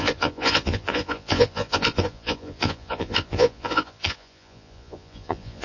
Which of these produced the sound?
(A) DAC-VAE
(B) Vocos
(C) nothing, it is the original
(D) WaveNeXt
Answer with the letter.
B